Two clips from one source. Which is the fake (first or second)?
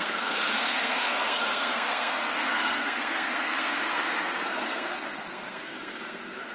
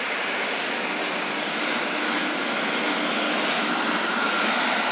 first